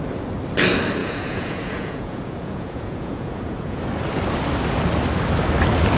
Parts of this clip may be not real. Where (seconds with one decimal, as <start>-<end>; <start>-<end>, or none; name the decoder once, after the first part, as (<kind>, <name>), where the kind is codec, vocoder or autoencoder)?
1.0-3.8 (vocoder, Vocos)